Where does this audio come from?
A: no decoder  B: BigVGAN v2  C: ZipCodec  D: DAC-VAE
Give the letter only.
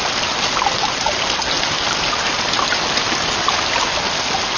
A